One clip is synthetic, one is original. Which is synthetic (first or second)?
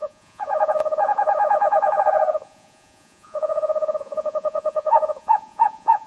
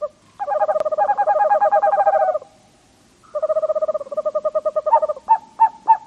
first